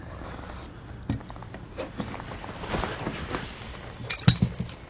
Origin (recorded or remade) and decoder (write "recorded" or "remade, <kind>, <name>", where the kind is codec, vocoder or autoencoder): recorded